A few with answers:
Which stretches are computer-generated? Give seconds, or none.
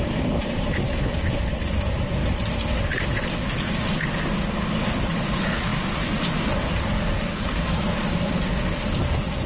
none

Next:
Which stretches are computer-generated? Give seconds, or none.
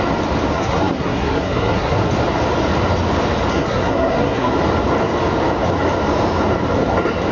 0.5-2.1 (codec, SNAC); 3.5-4.5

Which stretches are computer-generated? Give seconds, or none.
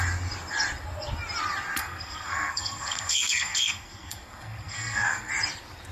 1.8-5.3 (codec, SNAC)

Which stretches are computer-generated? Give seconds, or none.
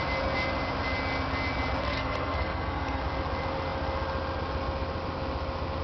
1.8-3.0 (codec, SNAC)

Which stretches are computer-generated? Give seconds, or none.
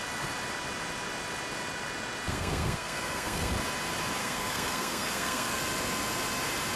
2.3-3.5 (codec, SNAC); 4.2-5.6